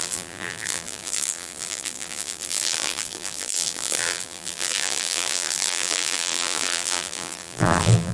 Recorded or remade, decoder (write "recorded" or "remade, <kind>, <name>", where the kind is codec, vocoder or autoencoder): remade, vocoder, BigVGAN v2